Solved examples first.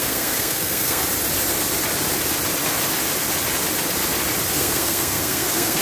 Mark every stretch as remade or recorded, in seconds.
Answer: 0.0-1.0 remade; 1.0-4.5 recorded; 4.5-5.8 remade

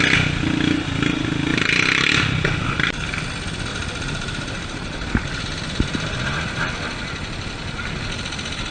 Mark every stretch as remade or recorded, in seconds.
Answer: 0.0-1.5 recorded; 1.5-2.6 remade; 2.6-3.7 recorded; 3.7-6.6 remade; 6.6-8.7 recorded

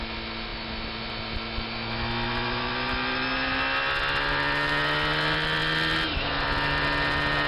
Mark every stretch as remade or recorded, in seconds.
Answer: 0.0-7.5 recorded